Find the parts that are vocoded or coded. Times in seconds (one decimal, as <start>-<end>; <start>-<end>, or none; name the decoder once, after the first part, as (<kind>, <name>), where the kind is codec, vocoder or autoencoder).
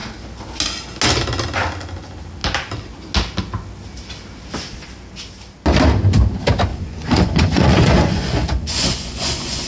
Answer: 6.7-9.7 (vocoder, Vocos)